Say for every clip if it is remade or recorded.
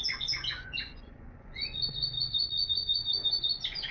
remade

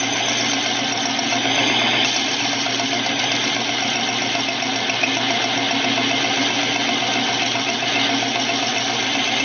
recorded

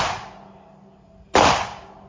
recorded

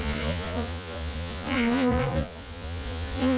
remade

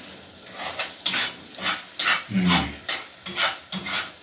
recorded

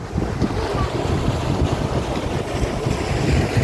recorded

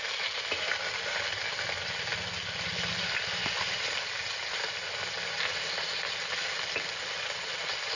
recorded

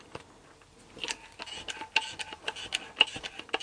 recorded